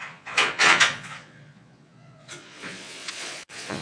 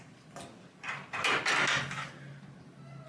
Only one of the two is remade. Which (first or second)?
first